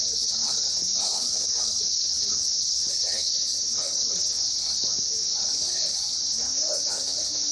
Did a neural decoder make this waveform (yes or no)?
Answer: yes